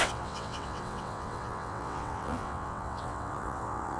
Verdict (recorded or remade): remade